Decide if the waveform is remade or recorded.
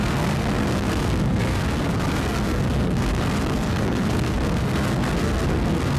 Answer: remade